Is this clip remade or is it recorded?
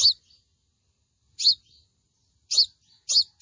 recorded